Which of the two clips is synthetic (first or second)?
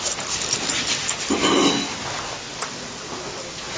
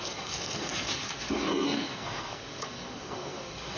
second